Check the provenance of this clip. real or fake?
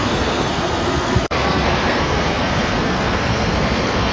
fake